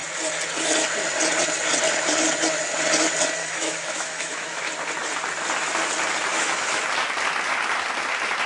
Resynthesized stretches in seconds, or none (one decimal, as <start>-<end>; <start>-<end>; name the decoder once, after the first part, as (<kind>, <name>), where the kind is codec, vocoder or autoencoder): 3.4-4.7 (autoencoder, DAC-VAE); 6.3-6.8